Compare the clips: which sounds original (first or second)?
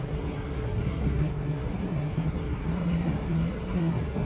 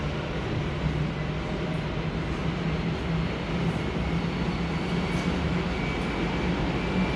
second